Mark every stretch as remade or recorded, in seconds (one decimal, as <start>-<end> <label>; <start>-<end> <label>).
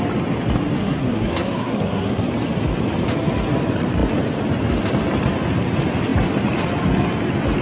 0.0-0.8 recorded; 0.8-2.3 remade; 2.3-7.6 recorded